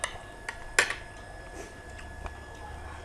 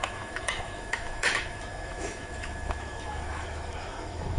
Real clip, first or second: first